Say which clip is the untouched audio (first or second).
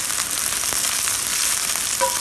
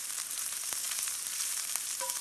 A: first